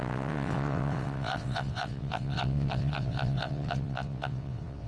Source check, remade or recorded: remade